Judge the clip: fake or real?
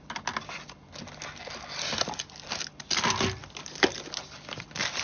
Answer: real